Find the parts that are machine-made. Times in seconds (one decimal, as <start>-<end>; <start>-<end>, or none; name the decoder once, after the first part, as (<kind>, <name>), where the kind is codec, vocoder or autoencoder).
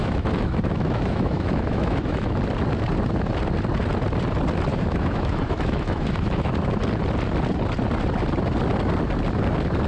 0.0-2.4 (autoencoder, DAC-VAE); 4.7-6.5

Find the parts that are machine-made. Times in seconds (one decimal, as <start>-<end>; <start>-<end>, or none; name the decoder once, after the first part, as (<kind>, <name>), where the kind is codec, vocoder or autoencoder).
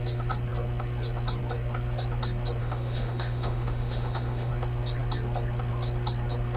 2.6-4.5 (autoencoder, DAC-VAE)